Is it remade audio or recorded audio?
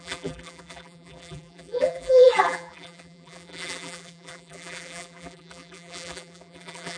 remade